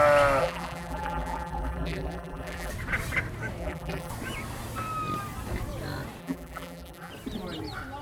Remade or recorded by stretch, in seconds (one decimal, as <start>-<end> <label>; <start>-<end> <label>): 0.0-0.4 recorded; 0.4-2.7 remade; 2.7-3.6 recorded; 3.6-4.1 remade; 4.1-6.2 recorded; 6.2-7.1 remade; 7.1-8.0 recorded